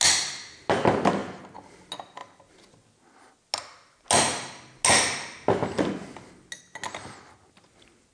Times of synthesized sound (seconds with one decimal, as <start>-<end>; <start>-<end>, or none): none